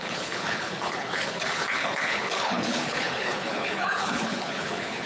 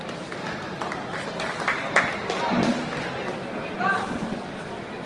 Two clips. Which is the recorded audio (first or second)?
second